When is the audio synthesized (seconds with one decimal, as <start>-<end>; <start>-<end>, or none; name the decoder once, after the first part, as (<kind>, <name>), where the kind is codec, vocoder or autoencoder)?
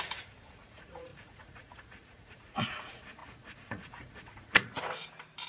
0.0-4.7 (vocoder, Vocos)